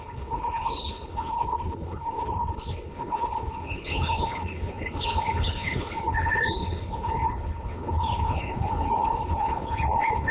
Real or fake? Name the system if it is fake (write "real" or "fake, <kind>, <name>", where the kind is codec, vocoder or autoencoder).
fake, codec, HILCodec